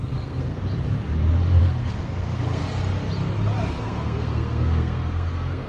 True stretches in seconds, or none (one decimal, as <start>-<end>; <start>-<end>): 0.6-1.6; 2.6-3.8

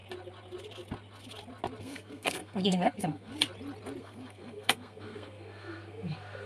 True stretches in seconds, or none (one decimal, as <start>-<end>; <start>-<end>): 0.0-1.8; 3.3-4.0

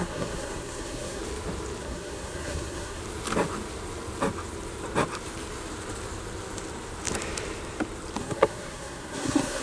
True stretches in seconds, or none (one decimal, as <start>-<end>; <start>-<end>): 1.2-1.8; 3.0-8.2

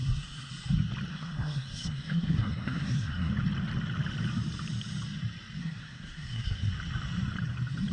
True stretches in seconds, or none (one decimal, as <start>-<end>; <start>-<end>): 0.5-1.1; 3.3-5.6; 6.7-7.9

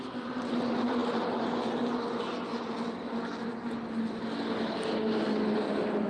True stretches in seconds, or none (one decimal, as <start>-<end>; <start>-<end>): 0.0-6.1